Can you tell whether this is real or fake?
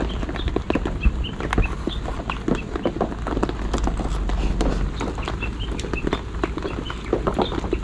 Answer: real